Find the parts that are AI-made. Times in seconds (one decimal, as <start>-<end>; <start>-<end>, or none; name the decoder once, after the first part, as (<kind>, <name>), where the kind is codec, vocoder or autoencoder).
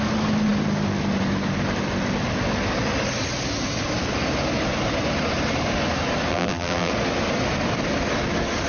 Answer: 6.3-6.9 (vocoder, BigVGAN v2)